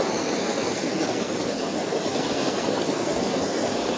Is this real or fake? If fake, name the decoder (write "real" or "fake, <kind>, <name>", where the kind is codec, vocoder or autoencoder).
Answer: fake, codec, SNAC